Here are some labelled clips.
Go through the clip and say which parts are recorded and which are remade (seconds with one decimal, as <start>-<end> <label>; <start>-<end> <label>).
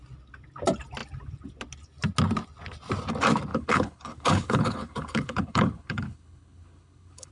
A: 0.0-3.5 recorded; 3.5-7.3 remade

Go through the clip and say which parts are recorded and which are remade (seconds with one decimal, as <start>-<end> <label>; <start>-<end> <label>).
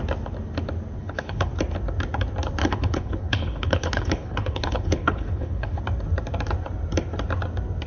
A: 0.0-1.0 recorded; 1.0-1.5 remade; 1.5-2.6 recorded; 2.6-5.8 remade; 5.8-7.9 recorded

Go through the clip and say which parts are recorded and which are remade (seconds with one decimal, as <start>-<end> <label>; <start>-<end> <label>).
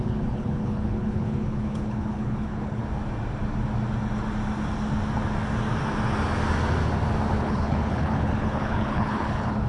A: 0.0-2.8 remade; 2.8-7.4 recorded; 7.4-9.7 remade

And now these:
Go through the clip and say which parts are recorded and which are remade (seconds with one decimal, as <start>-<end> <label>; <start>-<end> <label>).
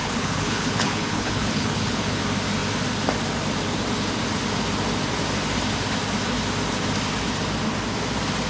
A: 0.0-2.2 remade; 2.2-8.5 recorded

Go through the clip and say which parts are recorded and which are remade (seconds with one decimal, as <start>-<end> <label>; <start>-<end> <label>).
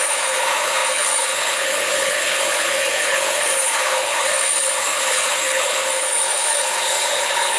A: 0.0-7.6 remade